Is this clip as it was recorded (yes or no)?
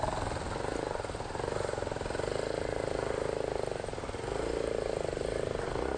yes